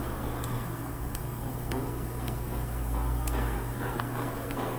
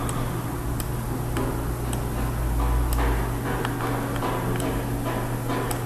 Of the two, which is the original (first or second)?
second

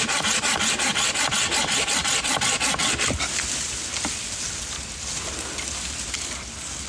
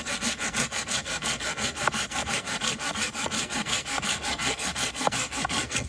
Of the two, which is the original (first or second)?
first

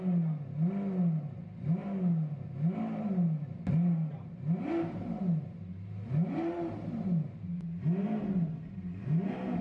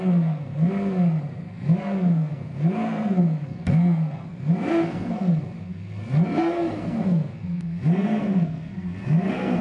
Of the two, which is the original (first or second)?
first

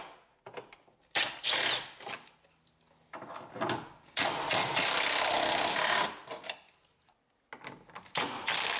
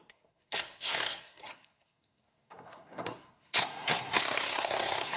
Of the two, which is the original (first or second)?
first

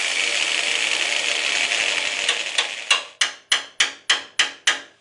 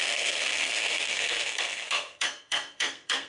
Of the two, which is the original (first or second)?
first